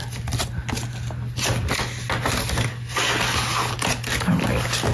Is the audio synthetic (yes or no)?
no